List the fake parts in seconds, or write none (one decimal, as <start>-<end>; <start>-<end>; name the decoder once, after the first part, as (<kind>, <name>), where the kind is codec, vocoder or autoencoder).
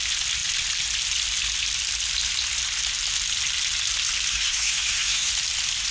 4.3-5.3 (codec, SNAC)